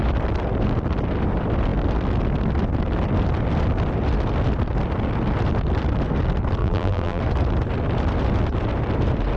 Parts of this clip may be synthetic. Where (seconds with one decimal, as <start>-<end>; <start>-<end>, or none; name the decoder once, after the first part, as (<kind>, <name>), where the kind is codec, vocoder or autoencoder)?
6.6-7.2 (vocoder, BigVGAN v2)